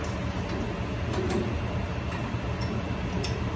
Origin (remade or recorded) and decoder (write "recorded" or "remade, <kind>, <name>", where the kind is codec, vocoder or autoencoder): recorded